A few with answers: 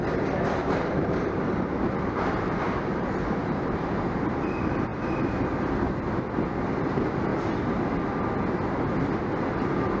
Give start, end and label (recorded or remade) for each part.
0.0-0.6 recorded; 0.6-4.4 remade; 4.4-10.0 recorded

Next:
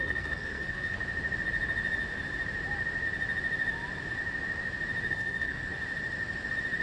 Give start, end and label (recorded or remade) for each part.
0.0-1.0 remade; 1.0-5.1 recorded; 5.1-5.7 remade; 5.7-6.8 recorded

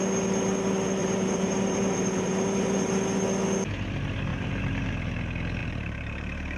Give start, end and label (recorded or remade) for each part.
0.0-1.0 recorded; 1.0-2.9 remade; 2.9-4.3 recorded; 4.3-4.9 remade; 4.9-5.6 recorded; 5.6-6.6 remade

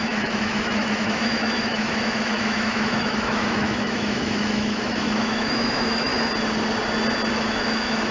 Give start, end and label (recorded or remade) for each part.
0.0-6.1 remade; 6.1-7.3 recorded; 7.3-8.1 remade

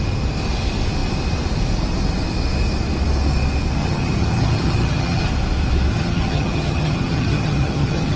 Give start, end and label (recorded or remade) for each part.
0.0-3.8 recorded; 3.8-5.3 remade; 5.3-5.9 recorded; 5.9-8.2 remade

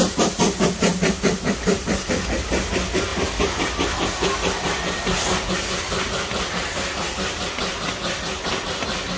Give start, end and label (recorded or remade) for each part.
0.0-9.2 recorded

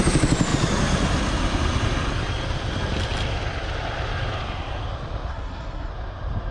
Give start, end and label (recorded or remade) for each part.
0.0-5.3 recorded; 5.3-5.9 remade; 5.9-6.5 recorded

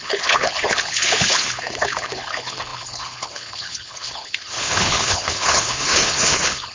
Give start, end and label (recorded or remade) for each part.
0.0-6.7 remade